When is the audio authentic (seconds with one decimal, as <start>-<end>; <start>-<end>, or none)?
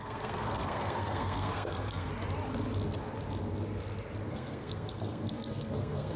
2.1-4.3